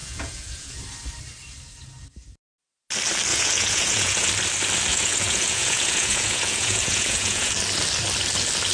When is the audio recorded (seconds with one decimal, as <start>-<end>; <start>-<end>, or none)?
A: 0.8-3.3; 4.3-4.9; 7.5-8.7